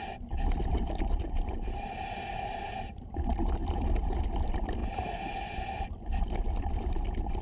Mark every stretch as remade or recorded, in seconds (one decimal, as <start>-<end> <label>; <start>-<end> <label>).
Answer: 0.0-0.7 recorded; 0.7-4.3 remade; 4.3-4.8 recorded; 4.8-5.7 remade; 5.7-7.4 recorded

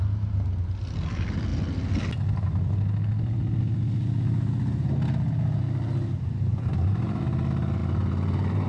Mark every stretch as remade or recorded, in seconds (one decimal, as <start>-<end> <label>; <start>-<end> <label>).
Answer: 0.0-6.5 recorded; 6.5-7.2 remade; 7.2-7.8 recorded; 7.8-8.7 remade

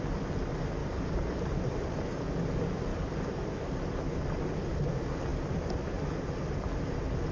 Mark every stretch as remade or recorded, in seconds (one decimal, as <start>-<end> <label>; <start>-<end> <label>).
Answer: 0.0-0.8 recorded; 0.8-2.2 remade; 2.2-2.9 recorded; 2.9-3.8 remade; 3.8-7.3 recorded

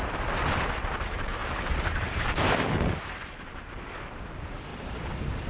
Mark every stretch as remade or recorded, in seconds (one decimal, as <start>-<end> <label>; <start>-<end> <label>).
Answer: 0.0-1.4 recorded; 1.4-2.3 remade; 2.3-4.7 recorded; 4.7-5.5 remade

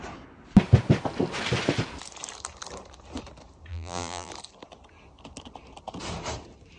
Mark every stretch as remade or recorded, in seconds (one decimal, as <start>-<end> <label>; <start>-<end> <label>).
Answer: 0.0-3.7 recorded; 3.7-4.3 remade; 4.3-6.8 recorded